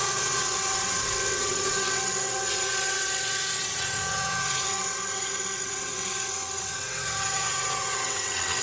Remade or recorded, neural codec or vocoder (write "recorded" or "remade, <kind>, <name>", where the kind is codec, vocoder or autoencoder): remade, vocoder, WaveNeXt